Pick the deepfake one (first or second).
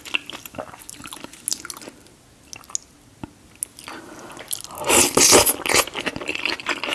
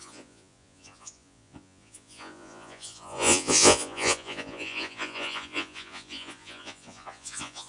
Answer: second